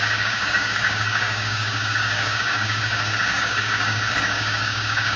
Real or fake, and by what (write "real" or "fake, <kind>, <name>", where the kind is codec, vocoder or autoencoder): fake, codec, DAC